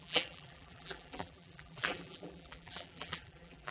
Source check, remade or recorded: remade